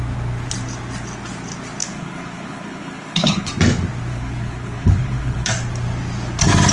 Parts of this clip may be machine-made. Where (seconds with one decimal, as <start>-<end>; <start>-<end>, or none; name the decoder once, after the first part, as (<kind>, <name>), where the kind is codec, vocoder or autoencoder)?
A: 1.8-3.5 (codec, HILCodec); 4.1-5.5